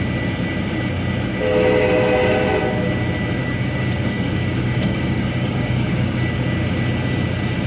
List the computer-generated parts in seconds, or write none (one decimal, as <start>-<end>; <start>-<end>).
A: 3.4-6.3

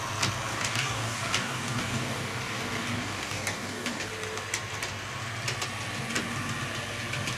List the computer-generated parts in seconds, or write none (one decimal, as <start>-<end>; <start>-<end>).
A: 0.5-4.1

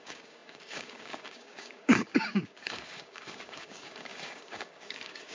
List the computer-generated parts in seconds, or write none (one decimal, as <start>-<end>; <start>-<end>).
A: 0.0-5.3

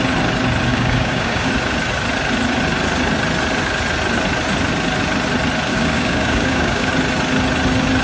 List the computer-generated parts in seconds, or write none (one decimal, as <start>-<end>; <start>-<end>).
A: 0.7-1.5; 5.7-6.9

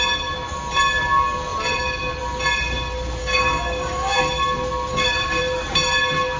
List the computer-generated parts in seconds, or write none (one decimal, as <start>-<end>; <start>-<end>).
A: 3.2-4.2; 4.9-5.4

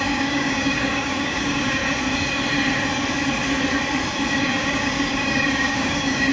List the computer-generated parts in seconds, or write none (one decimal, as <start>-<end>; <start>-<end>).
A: 0.0-1.8; 4.4-6.3

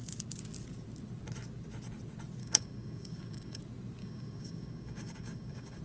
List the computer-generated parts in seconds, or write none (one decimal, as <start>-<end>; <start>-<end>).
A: 2.4-3.6; 4.0-5.8